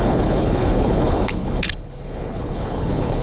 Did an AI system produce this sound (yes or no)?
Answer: yes